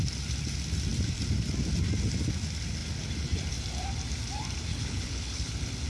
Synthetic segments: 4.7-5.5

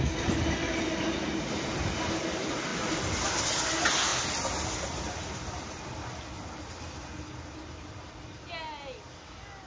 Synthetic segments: none